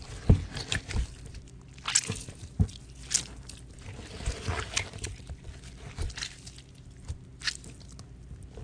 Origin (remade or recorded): recorded